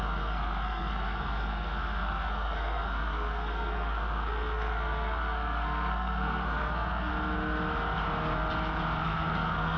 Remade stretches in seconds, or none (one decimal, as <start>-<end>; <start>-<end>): 0.0-7.1; 9.0-9.8